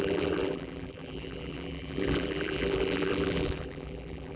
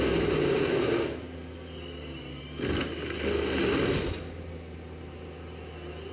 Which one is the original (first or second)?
second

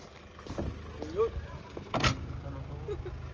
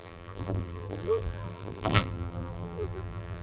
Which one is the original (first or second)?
first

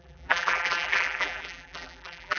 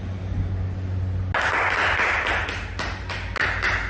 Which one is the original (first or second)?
second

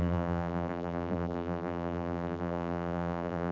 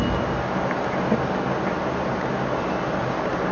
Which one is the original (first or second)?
second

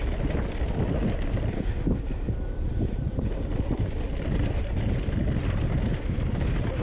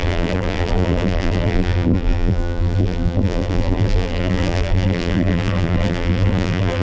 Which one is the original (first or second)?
first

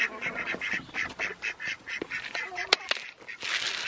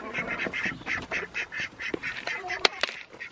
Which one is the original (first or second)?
first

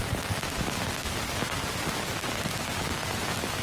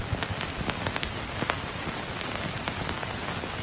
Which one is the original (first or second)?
first